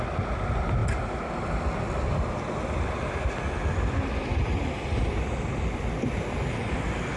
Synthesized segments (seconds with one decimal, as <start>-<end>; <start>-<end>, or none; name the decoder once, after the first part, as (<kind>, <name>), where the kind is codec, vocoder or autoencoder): none